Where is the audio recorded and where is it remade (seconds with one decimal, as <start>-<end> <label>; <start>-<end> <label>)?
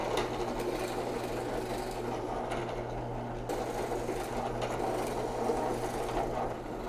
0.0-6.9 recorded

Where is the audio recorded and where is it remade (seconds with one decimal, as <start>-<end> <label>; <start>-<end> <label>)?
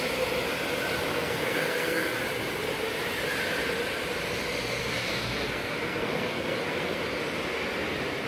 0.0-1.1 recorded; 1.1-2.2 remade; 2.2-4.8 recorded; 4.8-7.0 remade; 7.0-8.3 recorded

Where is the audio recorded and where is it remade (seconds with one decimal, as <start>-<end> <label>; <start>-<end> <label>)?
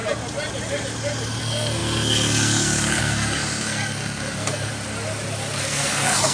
0.0-1.4 recorded; 1.4-4.7 remade; 4.7-5.6 recorded; 5.6-6.3 remade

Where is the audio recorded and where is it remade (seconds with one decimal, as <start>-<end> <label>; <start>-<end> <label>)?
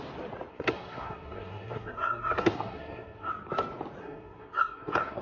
0.0-0.5 recorded; 0.5-3.3 remade; 3.3-4.0 recorded; 4.0-5.2 remade